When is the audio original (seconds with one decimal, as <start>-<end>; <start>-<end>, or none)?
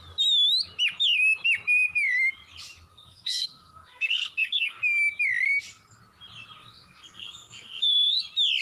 0.0-2.9; 4.8-6.6; 8.2-8.6